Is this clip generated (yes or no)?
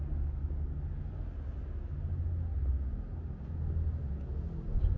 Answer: no